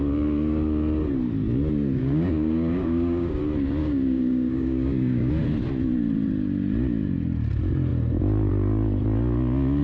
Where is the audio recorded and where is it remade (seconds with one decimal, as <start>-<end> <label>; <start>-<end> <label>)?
0.0-2.0 recorded; 2.0-3.4 remade; 3.4-3.8 recorded; 3.8-5.3 remade; 5.3-9.8 recorded